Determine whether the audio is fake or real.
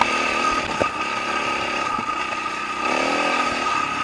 real